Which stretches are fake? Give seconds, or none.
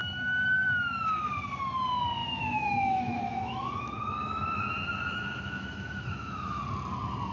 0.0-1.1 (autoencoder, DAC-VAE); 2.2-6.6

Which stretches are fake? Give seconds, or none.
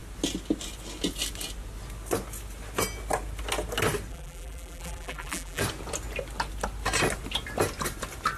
4.1-5.6 (vocoder, BigVGAN v2)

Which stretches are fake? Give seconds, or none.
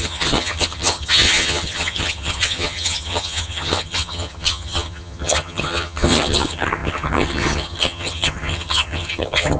0.0-9.6 (vocoder, HiFi-GAN)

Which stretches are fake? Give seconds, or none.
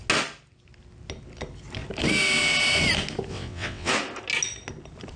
3.3-3.9 (vocoder, WaveNeXt)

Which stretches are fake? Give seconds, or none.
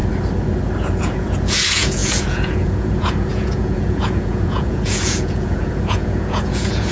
1.0-6.9 (vocoder, Vocos)